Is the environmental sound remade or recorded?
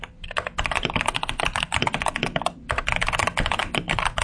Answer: recorded